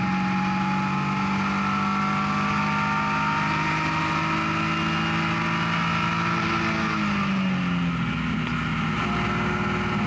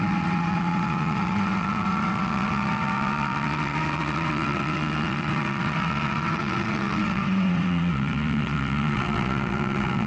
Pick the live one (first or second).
first